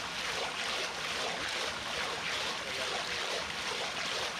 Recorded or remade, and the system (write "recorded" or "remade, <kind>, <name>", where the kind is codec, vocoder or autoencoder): recorded